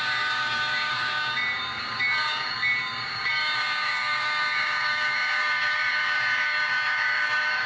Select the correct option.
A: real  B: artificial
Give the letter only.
B